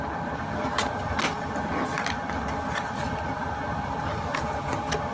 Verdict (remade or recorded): recorded